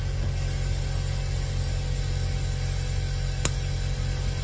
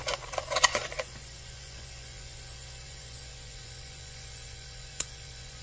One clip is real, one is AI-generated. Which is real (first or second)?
first